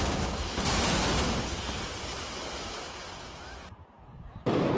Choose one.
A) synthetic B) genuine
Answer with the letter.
B